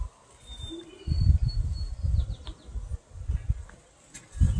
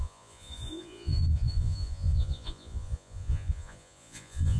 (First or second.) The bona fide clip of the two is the first